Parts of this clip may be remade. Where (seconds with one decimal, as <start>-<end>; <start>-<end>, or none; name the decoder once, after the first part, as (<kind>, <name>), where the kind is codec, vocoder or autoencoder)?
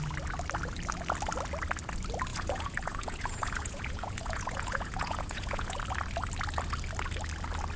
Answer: 2.3-5.8 (vocoder, Vocos)